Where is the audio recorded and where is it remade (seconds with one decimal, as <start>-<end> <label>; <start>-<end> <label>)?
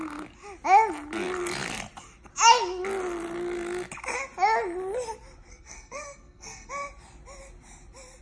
0.0-5.5 recorded; 5.5-6.7 remade; 6.7-8.2 recorded